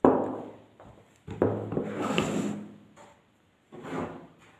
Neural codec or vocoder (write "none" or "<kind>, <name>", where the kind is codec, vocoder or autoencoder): none